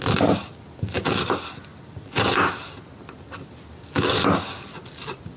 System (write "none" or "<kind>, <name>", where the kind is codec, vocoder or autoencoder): none